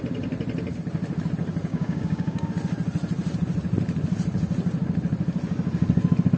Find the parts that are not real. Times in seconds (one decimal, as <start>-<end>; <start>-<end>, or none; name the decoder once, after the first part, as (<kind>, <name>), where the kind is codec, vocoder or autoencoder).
1.7-2.5 (codec, DAC)